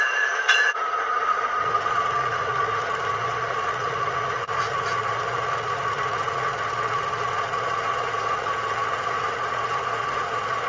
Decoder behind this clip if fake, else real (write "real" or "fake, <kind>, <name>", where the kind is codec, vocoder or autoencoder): fake, vocoder, Vocos